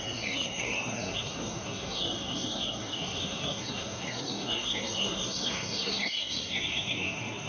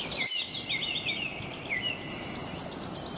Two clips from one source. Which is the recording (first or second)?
second